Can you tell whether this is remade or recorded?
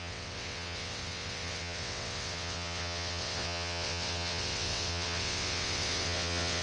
remade